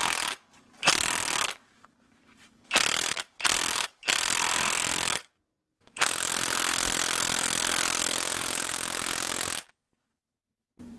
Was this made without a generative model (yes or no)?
no